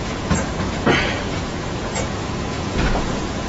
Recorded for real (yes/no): no